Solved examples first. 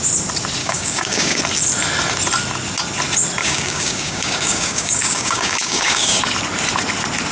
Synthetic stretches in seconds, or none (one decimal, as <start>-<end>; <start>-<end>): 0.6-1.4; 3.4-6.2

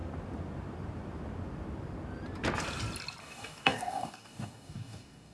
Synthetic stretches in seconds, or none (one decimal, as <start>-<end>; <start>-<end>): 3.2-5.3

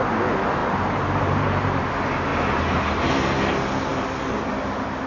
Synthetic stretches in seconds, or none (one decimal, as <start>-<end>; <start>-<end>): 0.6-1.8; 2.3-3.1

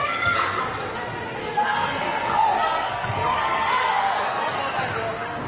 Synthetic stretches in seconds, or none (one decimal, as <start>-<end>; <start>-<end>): 0.0-0.6; 1.4-4.6

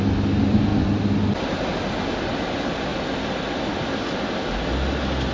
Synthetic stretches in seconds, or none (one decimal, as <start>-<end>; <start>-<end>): none

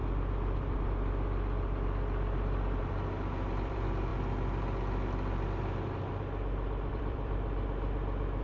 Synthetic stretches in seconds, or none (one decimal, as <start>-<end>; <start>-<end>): 2.8-4.1; 6.9-8.4